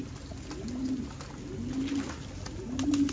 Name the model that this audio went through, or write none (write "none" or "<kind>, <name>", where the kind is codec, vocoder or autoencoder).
none